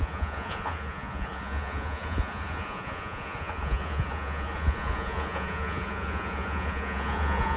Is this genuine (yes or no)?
no